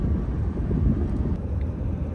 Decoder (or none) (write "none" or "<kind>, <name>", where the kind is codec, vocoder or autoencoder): none